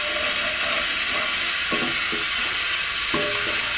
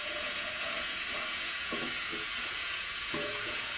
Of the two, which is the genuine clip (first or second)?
first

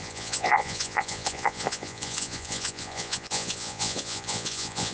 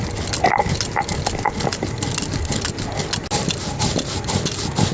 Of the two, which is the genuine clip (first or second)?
second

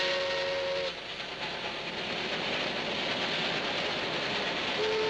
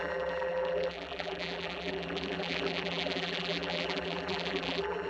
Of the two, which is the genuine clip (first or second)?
first